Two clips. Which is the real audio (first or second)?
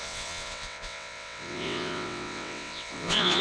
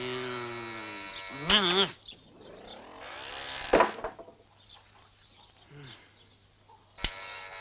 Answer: second